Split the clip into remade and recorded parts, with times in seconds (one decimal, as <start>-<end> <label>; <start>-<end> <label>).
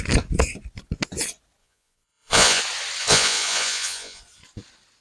0.0-1.6 recorded; 1.6-2.6 remade; 2.6-3.0 recorded; 3.0-4.2 remade; 4.2-5.0 recorded